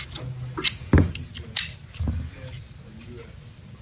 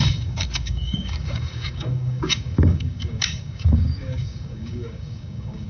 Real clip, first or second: first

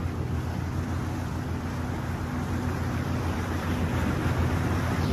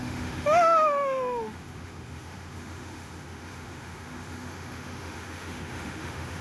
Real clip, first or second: first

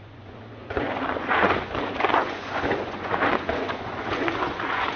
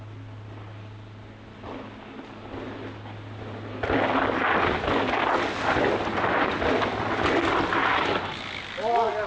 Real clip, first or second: second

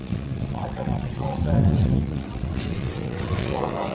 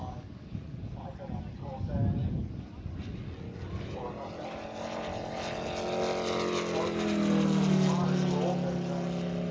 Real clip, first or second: second